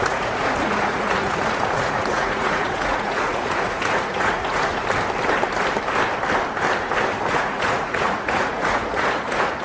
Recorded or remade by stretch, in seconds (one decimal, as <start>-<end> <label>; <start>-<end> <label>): 0.0-4.8 remade; 4.8-7.3 recorded; 7.3-9.6 remade